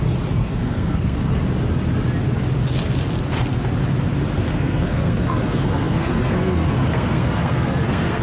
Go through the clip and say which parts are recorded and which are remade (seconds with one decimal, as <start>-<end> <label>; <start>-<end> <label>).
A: 0.0-0.4 recorded; 0.4-1.4 remade; 1.4-4.5 recorded; 4.5-8.2 remade